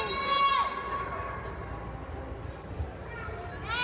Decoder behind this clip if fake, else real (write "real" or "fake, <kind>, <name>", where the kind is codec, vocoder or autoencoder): real